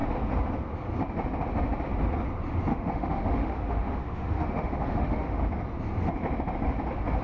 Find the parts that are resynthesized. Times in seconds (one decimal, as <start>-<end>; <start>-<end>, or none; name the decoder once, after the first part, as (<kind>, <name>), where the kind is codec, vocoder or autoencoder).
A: 2.7-5.4 (autoencoder, DAC-VAE)